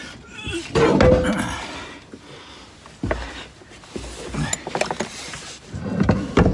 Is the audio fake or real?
real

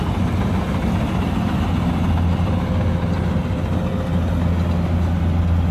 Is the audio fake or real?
real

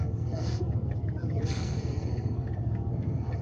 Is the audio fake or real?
fake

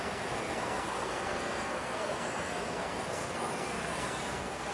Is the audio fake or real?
fake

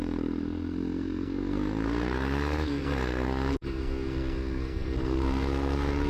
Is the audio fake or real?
fake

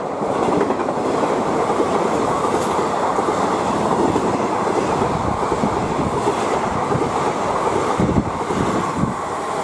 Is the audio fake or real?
real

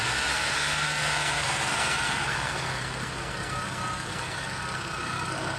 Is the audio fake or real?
fake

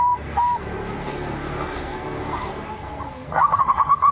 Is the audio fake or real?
fake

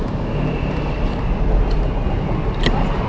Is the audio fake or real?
real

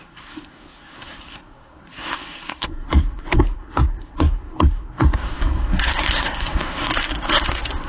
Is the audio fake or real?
fake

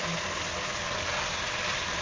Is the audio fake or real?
real